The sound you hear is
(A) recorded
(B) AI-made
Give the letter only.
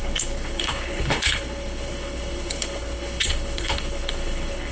B